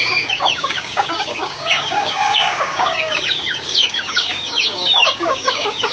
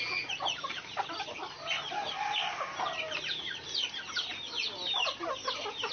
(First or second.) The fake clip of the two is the first